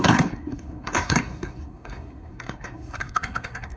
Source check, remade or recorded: remade